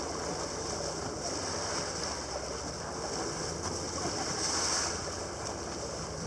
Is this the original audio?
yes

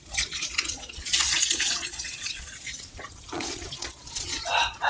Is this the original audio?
no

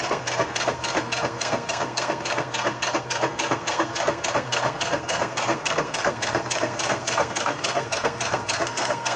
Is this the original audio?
no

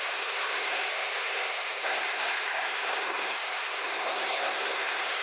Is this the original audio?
no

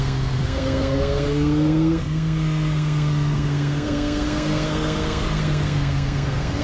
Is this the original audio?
no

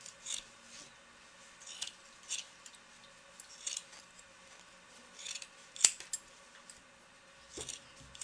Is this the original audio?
yes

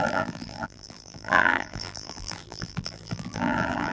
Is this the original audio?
no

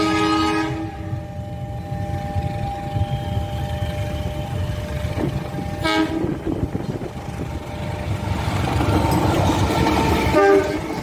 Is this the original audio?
yes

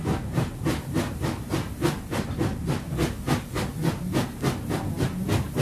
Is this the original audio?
yes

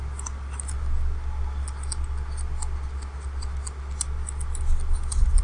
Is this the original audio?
yes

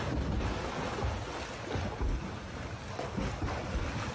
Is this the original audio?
yes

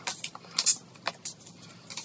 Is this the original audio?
yes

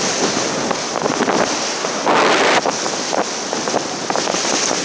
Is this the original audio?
no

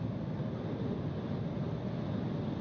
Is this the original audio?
yes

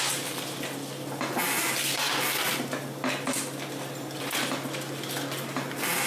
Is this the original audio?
yes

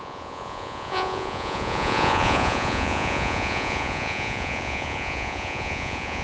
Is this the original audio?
no